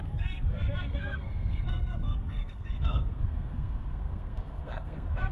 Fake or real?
fake